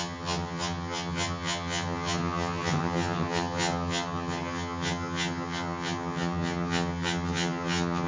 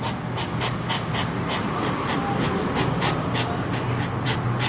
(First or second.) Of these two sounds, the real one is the second